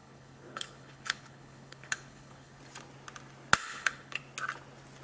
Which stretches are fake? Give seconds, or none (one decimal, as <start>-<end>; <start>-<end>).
0.0-2.6; 3.6-4.2